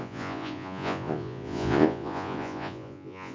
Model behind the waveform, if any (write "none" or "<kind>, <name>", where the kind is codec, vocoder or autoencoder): vocoder, Vocos